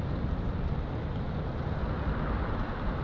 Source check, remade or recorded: recorded